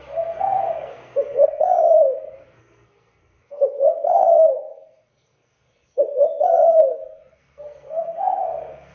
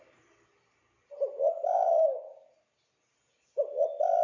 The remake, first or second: first